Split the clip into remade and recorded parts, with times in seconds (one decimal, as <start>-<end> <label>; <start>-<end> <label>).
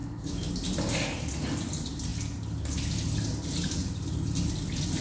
0.0-0.5 remade; 0.5-5.0 recorded